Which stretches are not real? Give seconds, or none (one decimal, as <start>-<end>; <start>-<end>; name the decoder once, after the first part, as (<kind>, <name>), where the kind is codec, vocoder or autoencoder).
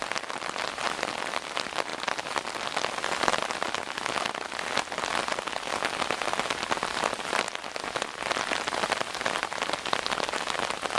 none